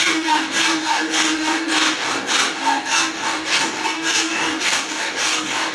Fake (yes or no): yes